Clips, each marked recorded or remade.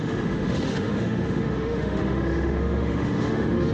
remade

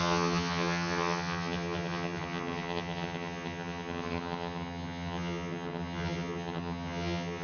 remade